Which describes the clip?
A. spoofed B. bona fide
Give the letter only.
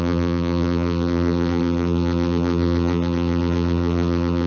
A